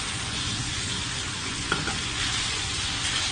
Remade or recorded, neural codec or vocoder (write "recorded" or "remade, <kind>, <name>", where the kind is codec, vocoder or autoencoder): remade, vocoder, Vocos